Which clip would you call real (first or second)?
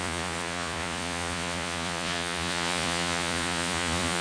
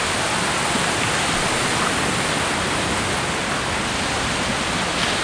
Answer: second